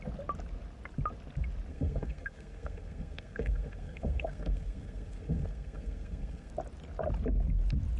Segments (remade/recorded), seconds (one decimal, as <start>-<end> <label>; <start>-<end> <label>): 0.0-1.7 recorded; 1.7-6.5 remade; 6.5-8.0 recorded